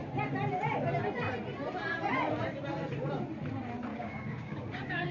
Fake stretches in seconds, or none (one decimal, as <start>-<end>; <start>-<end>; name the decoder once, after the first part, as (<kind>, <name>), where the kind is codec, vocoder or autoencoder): 3.9-5.1 (codec, DAC)